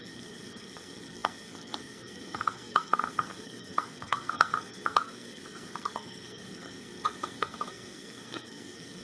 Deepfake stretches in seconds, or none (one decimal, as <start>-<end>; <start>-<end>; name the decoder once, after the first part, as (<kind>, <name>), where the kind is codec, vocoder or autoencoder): 0.0-9.0 (codec, SNAC)